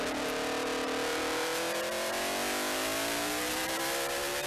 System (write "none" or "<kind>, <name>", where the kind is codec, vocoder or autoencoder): none